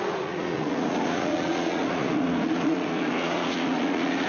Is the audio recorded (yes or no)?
no